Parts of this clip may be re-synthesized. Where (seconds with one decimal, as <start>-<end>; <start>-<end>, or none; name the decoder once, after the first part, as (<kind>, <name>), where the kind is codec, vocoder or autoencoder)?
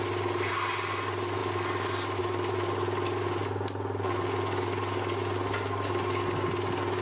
none